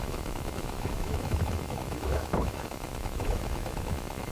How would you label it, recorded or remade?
remade